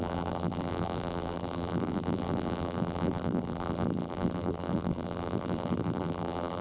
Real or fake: fake